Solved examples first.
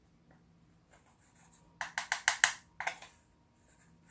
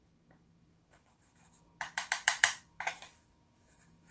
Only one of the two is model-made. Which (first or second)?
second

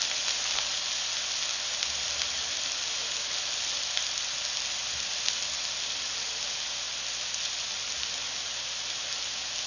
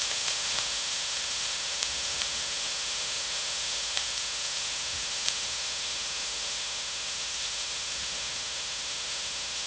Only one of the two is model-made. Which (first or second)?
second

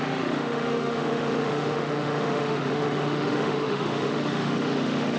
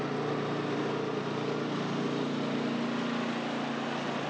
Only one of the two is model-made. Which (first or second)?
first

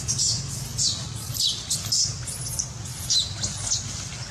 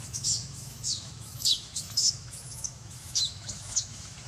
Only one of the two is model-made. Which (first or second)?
second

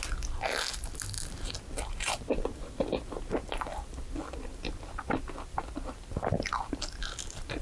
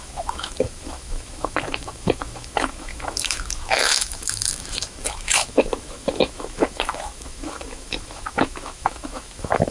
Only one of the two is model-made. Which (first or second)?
second